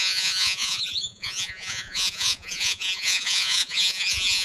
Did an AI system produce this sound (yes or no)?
yes